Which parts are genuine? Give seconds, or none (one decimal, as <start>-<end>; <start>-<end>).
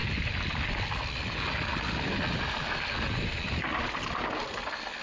0.0-5.0